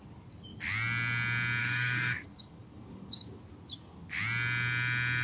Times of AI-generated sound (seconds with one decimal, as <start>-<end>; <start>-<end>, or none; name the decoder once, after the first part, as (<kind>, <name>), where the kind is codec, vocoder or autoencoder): 1.6-3.3 (codec, DAC)